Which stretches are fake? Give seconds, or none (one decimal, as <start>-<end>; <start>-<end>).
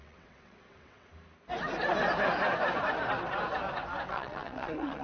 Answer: 0.0-1.1; 4.1-5.0